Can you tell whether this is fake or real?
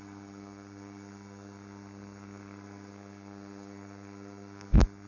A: fake